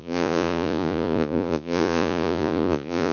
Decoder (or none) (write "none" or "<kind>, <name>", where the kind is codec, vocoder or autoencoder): vocoder, Vocos